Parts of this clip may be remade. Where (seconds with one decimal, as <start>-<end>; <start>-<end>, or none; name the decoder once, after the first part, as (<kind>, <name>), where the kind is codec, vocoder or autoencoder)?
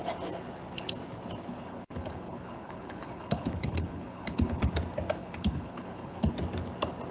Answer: 1.5-4.7 (codec, HILCodec); 5.2-6.3